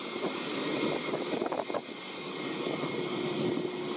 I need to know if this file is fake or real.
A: real